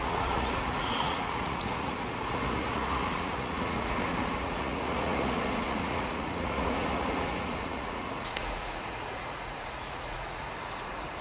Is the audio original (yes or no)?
no